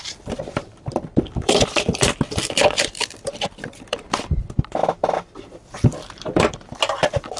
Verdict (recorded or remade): remade